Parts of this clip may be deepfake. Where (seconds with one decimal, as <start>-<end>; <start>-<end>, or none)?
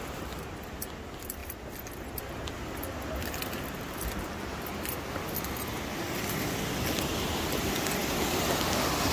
none